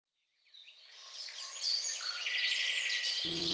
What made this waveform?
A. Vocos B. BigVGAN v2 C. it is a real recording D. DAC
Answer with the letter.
A